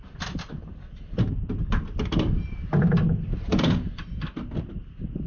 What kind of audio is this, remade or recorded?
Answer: recorded